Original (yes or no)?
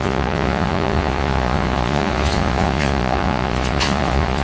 no